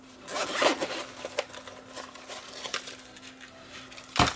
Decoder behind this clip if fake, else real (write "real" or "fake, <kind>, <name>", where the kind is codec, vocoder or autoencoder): real